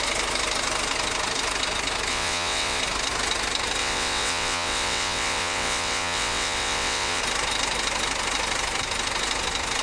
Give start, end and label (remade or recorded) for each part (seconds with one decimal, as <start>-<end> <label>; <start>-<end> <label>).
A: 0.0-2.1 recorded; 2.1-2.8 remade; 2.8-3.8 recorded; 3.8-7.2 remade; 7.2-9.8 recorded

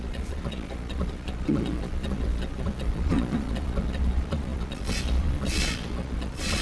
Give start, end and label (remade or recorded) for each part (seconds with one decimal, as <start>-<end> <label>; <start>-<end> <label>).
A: 0.0-6.6 remade

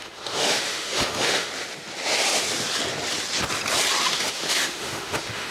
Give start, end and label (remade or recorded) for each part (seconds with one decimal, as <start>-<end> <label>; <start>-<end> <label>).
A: 0.0-1.5 remade; 1.5-4.0 recorded; 4.0-5.5 remade

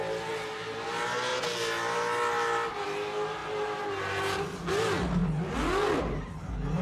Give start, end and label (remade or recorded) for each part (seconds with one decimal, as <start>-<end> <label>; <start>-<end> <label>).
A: 0.0-6.8 recorded

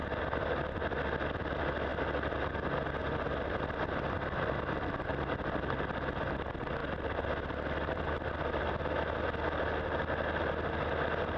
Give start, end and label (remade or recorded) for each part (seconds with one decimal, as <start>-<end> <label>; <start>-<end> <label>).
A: 0.0-11.4 recorded